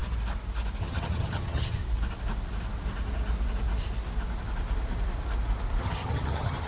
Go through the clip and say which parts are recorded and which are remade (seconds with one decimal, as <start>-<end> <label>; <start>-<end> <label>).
0.0-0.8 recorded; 0.8-1.8 remade; 1.8-5.8 recorded; 5.8-6.7 remade